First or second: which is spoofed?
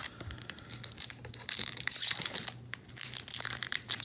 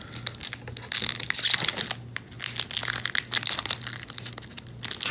first